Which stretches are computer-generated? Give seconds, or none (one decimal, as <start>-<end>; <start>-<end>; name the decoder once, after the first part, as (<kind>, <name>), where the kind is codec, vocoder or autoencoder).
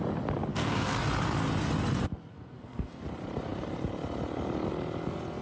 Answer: 0.5-1.0 (codec, SNAC); 2.3-3.0